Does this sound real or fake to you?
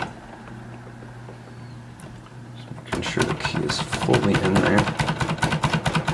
real